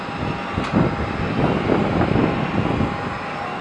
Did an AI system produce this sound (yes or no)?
no